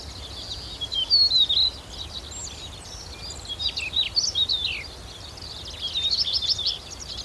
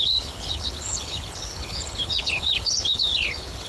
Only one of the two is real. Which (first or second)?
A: first